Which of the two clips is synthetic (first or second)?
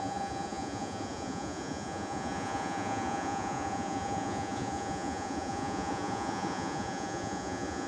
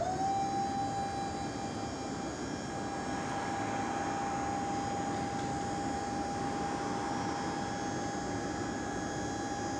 first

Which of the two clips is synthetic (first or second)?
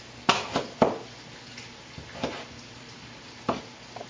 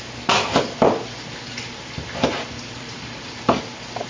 second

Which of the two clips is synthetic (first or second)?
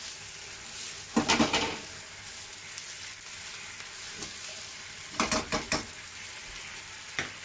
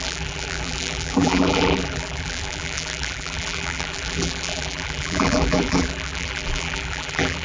second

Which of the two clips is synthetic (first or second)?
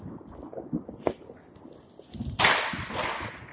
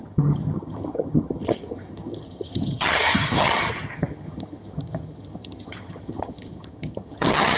second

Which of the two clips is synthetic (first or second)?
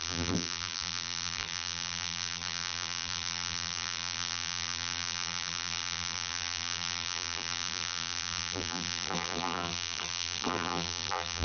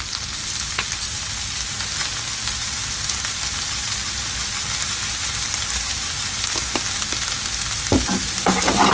first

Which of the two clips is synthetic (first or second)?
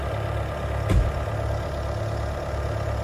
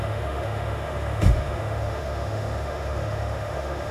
second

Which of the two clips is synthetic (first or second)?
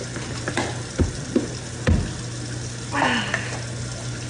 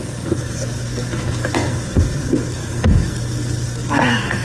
second